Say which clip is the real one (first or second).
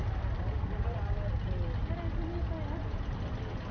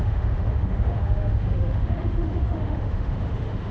first